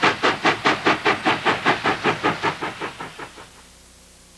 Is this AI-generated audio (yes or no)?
no